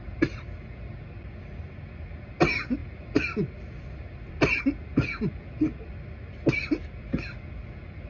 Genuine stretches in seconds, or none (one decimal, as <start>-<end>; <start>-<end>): 0.0-2.8; 4.6-8.1